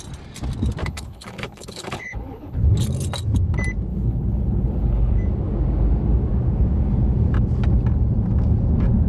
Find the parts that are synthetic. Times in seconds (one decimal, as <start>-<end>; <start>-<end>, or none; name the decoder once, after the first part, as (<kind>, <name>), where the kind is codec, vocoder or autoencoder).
0.8-2.7 (codec, HILCodec); 3.9-5.1